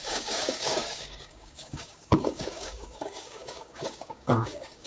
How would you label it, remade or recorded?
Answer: remade